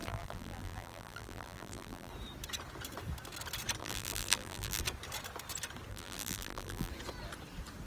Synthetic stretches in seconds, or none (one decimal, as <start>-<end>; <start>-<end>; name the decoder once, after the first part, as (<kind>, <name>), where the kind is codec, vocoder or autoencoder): 0.0-2.1 (vocoder, BigVGAN v2); 3.8-4.8; 5.9-6.9